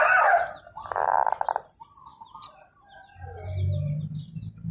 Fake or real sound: real